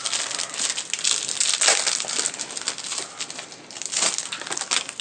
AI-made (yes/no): no